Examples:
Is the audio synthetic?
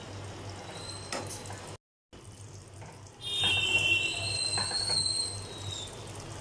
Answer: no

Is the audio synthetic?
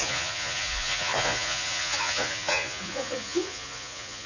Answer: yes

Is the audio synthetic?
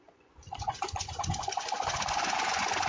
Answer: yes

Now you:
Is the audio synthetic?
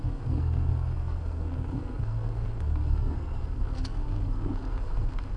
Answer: yes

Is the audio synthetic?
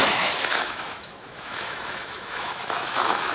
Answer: yes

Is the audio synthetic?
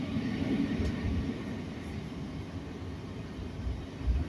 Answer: no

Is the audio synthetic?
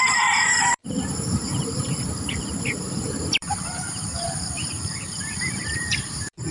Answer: yes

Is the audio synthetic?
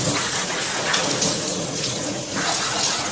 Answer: yes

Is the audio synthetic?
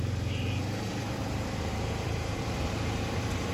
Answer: yes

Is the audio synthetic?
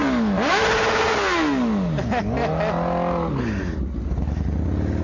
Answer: no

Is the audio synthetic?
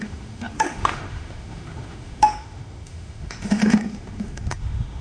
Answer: yes